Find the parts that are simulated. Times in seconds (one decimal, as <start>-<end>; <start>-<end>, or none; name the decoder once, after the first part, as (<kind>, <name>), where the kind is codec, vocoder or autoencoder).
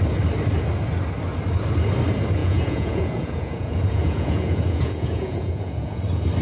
2.4-6.0 (vocoder, Vocos)